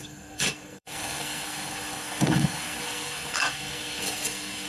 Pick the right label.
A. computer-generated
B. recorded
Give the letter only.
A